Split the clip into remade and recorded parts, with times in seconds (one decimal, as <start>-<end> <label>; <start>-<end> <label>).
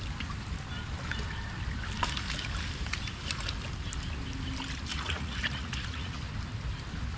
0.0-4.9 recorded; 4.9-6.2 remade; 6.2-7.2 recorded